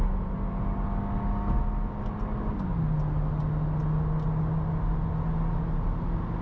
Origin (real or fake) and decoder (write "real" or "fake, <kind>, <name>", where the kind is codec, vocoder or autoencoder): real